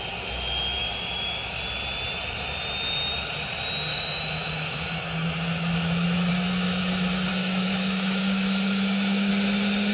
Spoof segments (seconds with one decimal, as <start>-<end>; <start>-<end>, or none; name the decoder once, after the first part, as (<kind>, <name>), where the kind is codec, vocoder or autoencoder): 0.8-1.5 (autoencoder, DAC-VAE); 3.9-6.3; 7.3-9.3

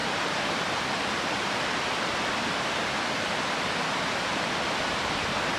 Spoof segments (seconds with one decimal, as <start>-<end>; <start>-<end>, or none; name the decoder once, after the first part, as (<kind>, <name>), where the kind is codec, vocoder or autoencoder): none